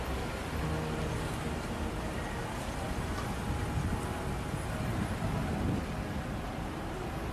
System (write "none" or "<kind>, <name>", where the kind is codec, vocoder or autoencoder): none